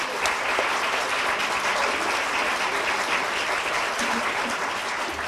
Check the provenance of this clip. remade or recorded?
recorded